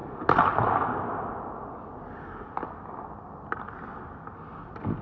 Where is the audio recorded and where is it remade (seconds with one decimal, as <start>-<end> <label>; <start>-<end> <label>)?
0.0-5.0 recorded